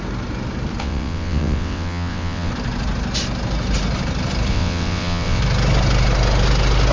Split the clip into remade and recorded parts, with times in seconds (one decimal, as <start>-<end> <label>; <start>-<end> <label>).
0.0-0.8 recorded; 0.8-2.5 remade; 2.5-4.5 recorded; 4.5-5.4 remade; 5.4-6.9 recorded